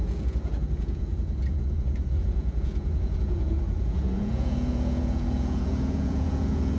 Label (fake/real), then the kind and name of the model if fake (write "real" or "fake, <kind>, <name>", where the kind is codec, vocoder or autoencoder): fake, vocoder, Vocos